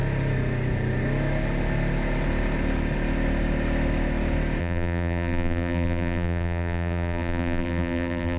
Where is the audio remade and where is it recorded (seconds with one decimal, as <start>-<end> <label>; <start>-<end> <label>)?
0.0-4.6 recorded; 4.6-8.4 remade